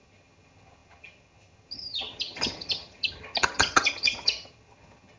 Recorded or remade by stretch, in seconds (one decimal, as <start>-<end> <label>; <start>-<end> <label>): 0.0-5.2 remade